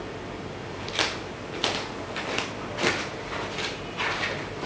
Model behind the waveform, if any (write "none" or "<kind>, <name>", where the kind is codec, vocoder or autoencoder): none